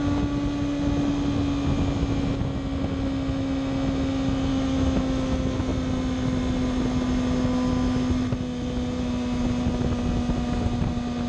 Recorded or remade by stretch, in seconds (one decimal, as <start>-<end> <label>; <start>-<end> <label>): 0.0-4.5 recorded; 4.5-5.0 remade; 5.0-11.3 recorded